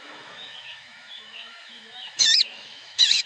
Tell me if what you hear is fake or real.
fake